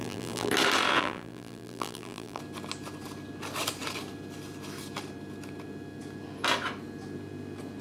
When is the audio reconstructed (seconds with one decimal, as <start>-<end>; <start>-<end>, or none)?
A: 0.0-0.5; 1.0-2.4